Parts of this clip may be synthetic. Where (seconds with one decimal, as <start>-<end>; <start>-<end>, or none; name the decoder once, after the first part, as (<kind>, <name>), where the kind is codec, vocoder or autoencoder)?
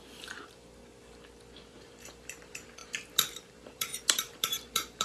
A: 0.0-0.8 (vocoder, BigVGAN v2); 1.8-5.0